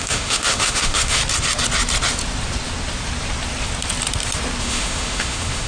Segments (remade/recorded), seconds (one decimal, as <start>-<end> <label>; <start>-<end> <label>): 0.0-1.2 remade; 1.2-4.6 recorded; 4.6-5.7 remade